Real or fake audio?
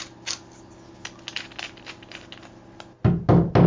real